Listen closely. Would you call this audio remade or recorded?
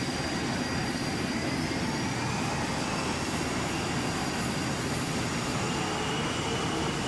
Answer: recorded